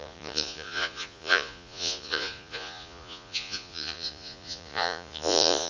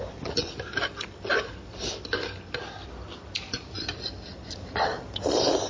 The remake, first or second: first